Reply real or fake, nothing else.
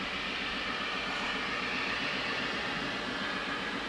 real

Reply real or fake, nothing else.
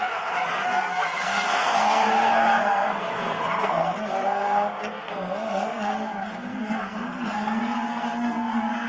fake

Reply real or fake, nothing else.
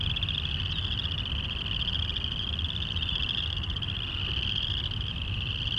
real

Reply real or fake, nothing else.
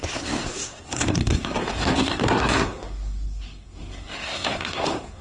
fake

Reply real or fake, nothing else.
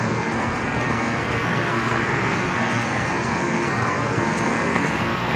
fake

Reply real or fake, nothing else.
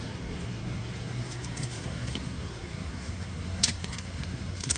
fake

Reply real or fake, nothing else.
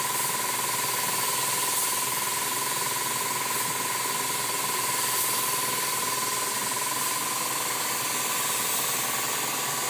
real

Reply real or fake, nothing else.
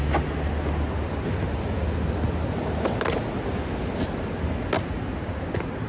real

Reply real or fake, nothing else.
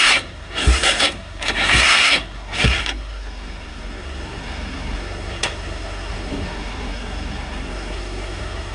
fake